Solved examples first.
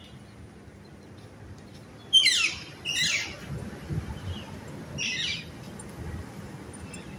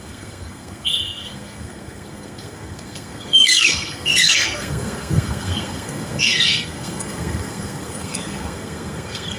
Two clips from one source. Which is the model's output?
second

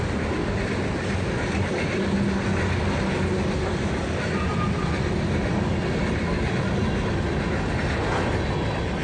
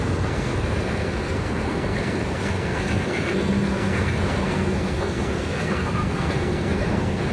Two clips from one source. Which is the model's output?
second